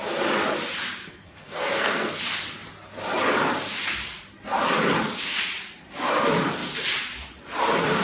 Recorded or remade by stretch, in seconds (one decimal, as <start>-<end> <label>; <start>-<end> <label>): 0.0-1.0 recorded; 1.0-2.2 remade; 2.2-8.0 recorded